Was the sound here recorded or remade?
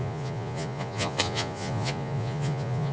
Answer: remade